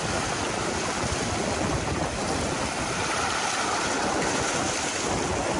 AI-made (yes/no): no